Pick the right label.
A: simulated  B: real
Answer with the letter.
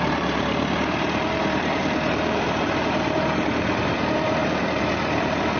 A